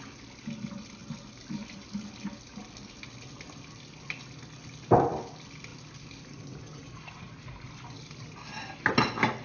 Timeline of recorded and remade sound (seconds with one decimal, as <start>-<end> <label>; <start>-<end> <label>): 0.0-9.4 recorded